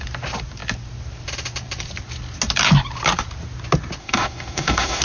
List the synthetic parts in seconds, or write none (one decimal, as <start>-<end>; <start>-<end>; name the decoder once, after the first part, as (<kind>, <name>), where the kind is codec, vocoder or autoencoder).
4.0-5.0 (autoencoder, DAC-VAE)